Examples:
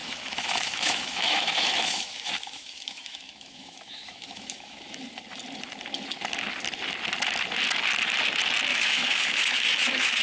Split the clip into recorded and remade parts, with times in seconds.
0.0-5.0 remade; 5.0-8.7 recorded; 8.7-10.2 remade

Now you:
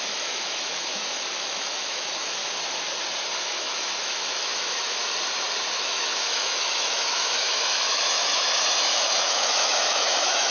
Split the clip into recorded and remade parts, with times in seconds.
0.0-2.4 remade; 2.4-3.4 recorded; 3.4-5.0 remade; 5.0-5.7 recorded; 5.7-10.5 remade

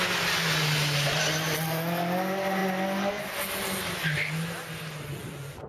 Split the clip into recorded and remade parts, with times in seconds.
0.0-5.7 recorded